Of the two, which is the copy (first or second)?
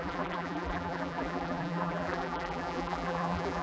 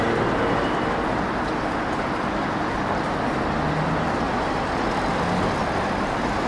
first